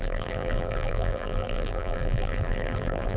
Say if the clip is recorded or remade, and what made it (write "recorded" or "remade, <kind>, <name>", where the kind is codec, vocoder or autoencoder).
remade, vocoder, BigVGAN v2